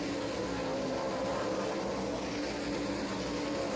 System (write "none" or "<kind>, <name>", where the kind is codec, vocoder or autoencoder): none